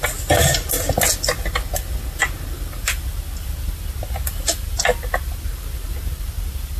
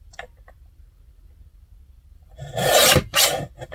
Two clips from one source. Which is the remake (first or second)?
second